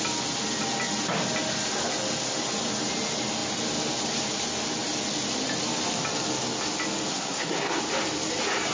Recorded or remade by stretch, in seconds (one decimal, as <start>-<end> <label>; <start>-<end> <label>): 0.0-7.1 recorded; 7.1-7.8 remade; 7.8-8.7 recorded